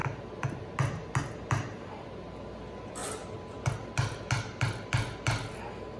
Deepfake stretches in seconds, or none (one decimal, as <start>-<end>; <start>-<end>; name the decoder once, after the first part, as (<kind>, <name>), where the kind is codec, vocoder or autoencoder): none

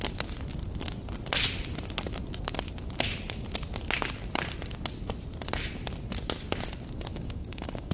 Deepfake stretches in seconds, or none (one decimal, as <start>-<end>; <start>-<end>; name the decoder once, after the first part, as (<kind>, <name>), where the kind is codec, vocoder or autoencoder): 7.1-7.9 (codec, DAC)

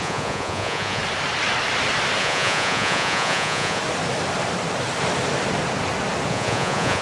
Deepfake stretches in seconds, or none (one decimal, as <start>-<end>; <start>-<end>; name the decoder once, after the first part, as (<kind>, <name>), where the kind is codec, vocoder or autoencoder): 0.0-1.0 (vocoder, Vocos); 2.2-3.8; 6.3-7.0

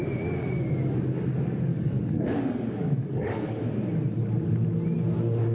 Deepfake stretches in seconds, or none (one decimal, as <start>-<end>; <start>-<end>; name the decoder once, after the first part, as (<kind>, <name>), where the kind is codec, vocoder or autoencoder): 1.7-3.6 (codec, DAC)

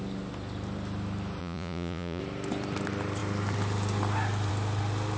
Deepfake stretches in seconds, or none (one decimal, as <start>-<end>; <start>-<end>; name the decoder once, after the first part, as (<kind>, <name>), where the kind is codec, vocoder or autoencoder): 1.4-2.2 (vocoder, Vocos)

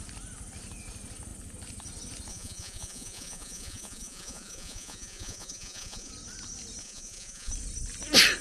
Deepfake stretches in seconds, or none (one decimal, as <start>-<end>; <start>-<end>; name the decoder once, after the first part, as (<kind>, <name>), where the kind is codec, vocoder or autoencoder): 2.3-6.1 (vocoder, Vocos); 6.8-7.5

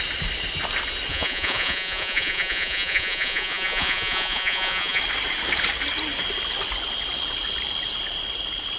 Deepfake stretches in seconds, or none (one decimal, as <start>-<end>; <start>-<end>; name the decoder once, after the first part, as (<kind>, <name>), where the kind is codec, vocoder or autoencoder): 1.1-5.0 (vocoder, Vocos)